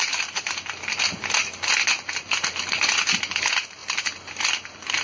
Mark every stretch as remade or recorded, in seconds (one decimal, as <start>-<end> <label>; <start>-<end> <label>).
0.0-5.0 recorded